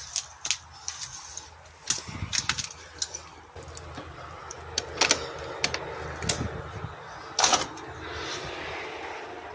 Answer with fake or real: real